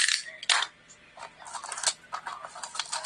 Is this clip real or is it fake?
real